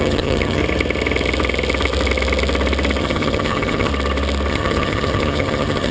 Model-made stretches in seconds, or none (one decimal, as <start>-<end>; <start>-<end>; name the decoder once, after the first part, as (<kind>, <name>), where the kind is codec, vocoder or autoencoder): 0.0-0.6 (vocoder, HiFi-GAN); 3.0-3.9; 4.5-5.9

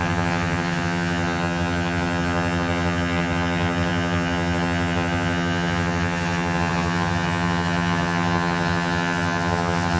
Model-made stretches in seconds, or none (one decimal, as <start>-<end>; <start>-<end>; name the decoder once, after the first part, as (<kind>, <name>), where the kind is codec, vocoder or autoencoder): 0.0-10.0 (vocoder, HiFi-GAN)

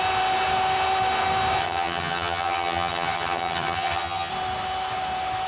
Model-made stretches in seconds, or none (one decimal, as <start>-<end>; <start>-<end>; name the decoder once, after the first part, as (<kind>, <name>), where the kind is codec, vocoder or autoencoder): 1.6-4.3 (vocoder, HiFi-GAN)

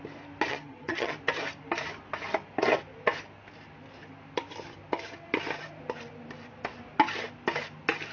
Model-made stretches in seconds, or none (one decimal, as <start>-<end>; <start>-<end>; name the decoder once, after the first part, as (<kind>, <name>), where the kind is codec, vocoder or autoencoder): 0.5-1.2 (vocoder, HiFi-GAN)

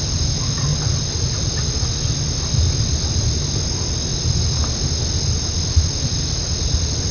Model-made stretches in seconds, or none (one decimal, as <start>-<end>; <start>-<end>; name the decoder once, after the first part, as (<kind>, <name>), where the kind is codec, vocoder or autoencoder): none

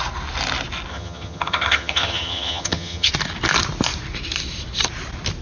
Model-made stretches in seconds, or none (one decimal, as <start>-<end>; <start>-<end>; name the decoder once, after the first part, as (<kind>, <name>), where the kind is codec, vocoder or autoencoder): 0.9-3.1 (vocoder, HiFi-GAN)

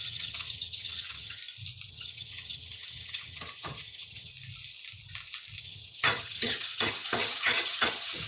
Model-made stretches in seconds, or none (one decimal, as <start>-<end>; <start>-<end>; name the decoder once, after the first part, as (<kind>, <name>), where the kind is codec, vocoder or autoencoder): 0.0-1.4 (vocoder, HiFi-GAN); 1.9-4.3; 5.6-8.3

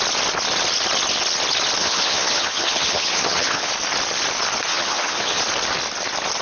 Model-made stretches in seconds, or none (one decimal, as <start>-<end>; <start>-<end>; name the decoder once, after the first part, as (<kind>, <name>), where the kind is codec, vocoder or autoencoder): 1.8-3.7 (vocoder, HiFi-GAN); 4.7-5.4